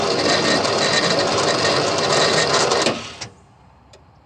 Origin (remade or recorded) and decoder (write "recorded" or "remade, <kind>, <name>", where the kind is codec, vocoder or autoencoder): remade, vocoder, BigVGAN v2